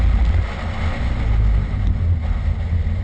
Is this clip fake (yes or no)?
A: no